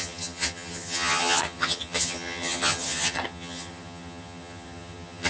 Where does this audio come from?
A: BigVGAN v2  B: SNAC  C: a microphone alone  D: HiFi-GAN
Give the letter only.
D